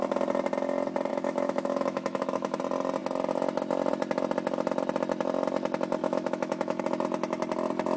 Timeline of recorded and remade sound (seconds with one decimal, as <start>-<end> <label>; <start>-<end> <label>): 0.0-1.1 recorded; 1.1-2.6 remade; 2.6-6.0 recorded; 6.0-6.8 remade; 6.8-8.0 recorded